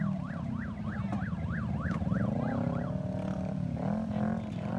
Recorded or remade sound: recorded